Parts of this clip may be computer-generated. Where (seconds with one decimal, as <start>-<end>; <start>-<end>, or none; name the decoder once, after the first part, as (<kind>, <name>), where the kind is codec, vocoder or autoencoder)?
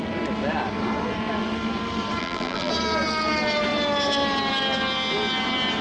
2.2-2.7 (vocoder, BigVGAN v2)